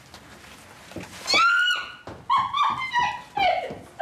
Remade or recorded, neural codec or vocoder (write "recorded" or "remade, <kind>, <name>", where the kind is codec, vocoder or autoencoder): recorded